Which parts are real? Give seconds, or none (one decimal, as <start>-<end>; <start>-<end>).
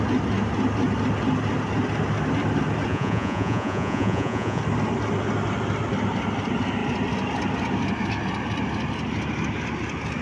0.0-2.9; 4.6-10.2